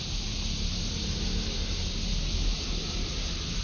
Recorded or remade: recorded